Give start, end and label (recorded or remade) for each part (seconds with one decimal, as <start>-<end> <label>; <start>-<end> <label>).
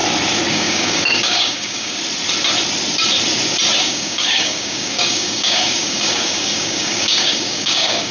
0.0-0.5 recorded; 0.5-2.0 remade; 2.0-3.8 recorded; 3.8-8.1 remade